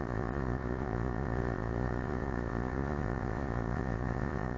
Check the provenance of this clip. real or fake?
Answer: fake